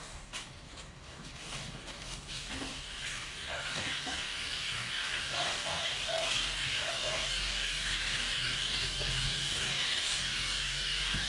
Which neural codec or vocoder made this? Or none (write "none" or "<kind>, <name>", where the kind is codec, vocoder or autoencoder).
codec, DAC